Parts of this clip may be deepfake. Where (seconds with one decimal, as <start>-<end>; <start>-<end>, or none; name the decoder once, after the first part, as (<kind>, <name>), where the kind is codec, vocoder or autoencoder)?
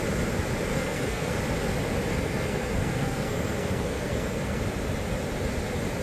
0.7-1.4 (codec, SNAC); 2.1-4.6